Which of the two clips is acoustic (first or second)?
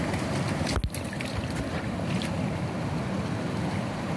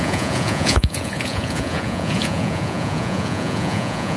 first